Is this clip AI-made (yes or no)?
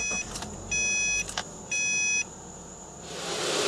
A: no